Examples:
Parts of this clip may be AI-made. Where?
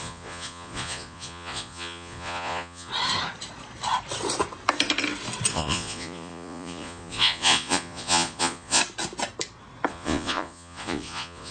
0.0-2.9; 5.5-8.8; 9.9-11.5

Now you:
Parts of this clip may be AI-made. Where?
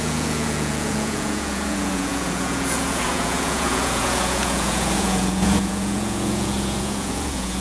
0.0-7.6